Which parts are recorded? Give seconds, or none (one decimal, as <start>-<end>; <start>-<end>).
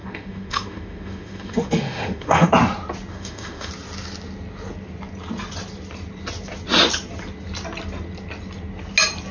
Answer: 2.5-3.1; 3.7-9.3